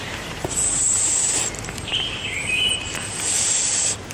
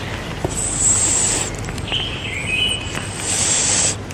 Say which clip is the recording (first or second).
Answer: second